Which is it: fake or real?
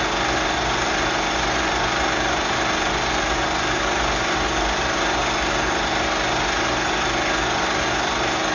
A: real